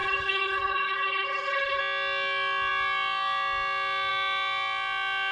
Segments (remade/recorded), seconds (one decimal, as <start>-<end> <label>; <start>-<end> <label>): 0.0-1.8 remade; 1.8-5.3 recorded